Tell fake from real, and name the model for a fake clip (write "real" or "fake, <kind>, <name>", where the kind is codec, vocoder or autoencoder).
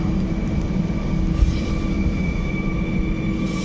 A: real